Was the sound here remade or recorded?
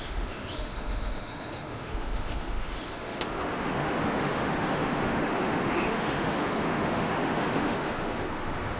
remade